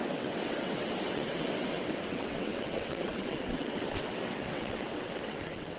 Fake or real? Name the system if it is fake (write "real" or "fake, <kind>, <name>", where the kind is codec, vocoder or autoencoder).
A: fake, vocoder, WaveNeXt